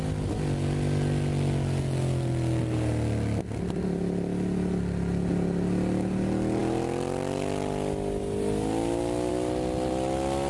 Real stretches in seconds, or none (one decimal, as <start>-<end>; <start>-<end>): 0.0-10.5